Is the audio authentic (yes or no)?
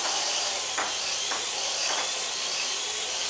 no